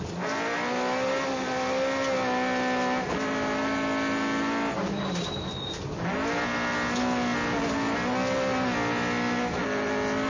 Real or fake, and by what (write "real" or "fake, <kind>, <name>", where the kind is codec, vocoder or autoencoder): real